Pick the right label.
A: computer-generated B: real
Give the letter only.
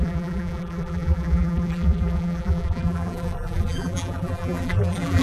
A